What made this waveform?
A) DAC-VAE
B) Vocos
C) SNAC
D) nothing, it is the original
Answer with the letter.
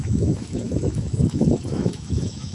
A